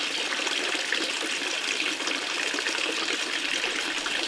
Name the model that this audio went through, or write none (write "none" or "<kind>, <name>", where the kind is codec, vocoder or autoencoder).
none